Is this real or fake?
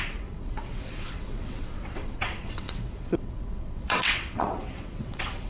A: fake